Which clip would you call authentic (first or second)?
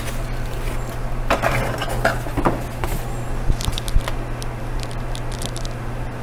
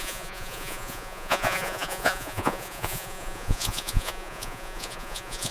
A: first